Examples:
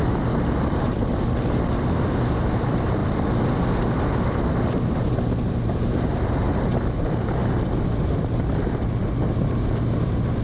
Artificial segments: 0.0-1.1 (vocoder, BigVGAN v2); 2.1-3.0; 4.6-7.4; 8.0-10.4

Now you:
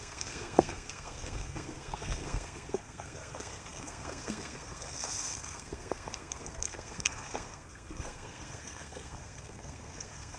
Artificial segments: 0.0-10.4 (codec, SNAC)

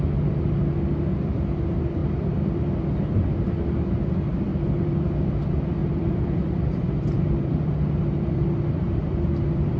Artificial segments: 2.0-2.9 (vocoder, BigVGAN v2); 4.5-5.2; 5.8-9.8

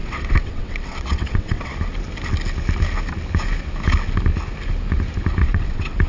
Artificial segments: 0.0-1.7 (vocoder, WaveNeXt); 5.4-6.1